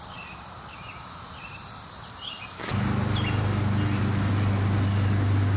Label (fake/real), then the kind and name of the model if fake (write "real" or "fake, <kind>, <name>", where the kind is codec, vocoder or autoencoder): real